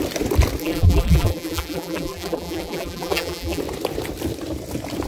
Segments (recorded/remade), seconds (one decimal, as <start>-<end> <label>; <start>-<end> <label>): 0.0-0.6 recorded; 0.6-3.6 remade; 3.6-5.1 recorded